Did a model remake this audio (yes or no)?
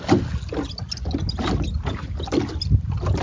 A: no